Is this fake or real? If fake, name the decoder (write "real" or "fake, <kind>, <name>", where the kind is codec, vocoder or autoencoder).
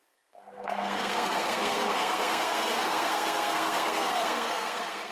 fake, codec, SNAC